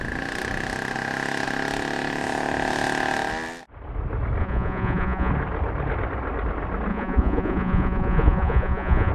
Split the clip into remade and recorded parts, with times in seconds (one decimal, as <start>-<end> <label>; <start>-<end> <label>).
0.0-4.4 recorded; 4.4-5.3 remade; 5.3-6.9 recorded; 6.9-9.1 remade